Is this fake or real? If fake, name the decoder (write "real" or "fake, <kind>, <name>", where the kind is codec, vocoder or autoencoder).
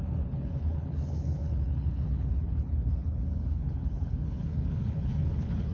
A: fake, codec, HILCodec